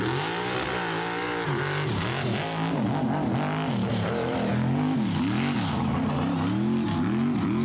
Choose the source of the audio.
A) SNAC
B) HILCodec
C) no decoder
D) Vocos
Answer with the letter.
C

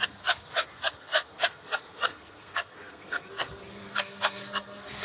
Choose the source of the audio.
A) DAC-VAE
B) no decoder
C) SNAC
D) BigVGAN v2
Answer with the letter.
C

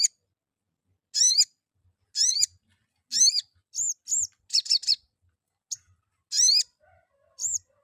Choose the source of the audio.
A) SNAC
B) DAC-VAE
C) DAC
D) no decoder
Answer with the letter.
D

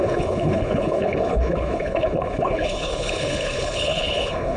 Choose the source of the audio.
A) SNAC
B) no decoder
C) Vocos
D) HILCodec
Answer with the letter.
D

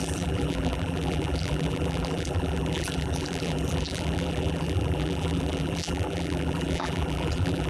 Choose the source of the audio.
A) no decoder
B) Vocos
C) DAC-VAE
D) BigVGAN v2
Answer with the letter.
D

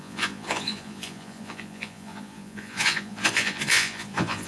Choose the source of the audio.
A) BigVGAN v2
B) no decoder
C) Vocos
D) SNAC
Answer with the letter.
C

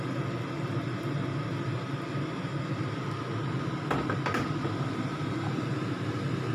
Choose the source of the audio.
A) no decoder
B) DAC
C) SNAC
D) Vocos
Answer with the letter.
A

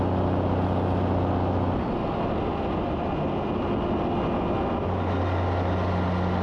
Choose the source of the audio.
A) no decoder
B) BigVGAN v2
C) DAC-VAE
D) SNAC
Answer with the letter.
A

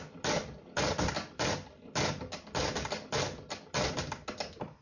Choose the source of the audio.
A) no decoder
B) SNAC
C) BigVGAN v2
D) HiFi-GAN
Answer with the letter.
A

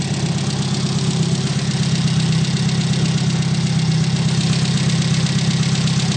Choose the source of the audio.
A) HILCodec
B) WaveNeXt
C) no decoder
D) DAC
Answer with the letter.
C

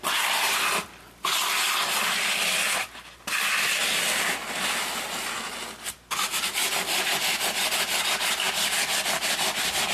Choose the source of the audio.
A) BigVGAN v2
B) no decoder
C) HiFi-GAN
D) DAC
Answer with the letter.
B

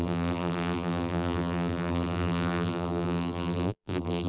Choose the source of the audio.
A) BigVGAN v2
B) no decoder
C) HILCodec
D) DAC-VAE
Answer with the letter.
A